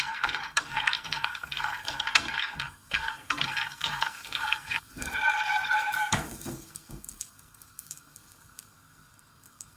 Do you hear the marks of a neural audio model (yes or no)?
yes